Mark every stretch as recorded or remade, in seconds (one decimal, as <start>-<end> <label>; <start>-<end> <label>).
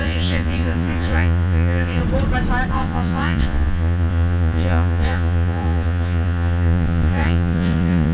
0.0-2.0 remade; 2.0-2.7 recorded; 2.7-8.1 remade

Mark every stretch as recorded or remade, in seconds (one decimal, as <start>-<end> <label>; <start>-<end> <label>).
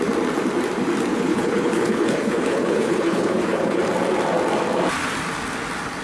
0.0-1.1 recorded; 1.1-3.8 remade; 3.8-6.0 recorded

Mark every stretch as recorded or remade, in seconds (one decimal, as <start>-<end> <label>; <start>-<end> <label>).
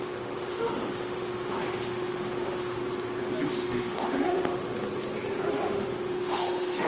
0.0-2.8 remade; 2.8-3.5 recorded; 3.5-4.6 remade; 4.6-5.5 recorded; 5.5-6.9 remade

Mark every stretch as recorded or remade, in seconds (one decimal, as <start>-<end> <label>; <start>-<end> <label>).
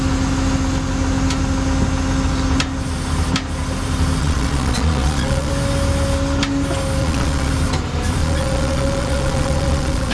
0.0-4.2 recorded; 4.2-5.5 remade; 5.5-7.0 recorded; 7.0-7.5 remade; 7.5-8.2 recorded; 8.2-10.1 remade